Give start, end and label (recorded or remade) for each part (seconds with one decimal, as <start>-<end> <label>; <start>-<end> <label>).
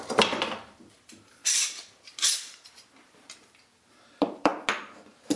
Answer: 0.0-1.4 remade; 1.4-3.9 recorded; 3.9-4.5 remade; 4.5-5.4 recorded